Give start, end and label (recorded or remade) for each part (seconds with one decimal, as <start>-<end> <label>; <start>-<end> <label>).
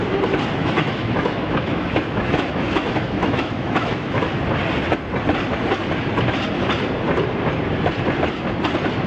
0.0-0.6 recorded; 0.6-4.2 remade; 4.2-9.1 recorded